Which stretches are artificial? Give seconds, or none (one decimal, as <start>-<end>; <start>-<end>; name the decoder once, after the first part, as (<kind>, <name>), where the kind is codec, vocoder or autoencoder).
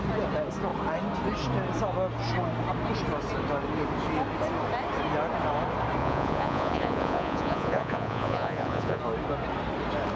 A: 6.0-9.0 (vocoder, Vocos)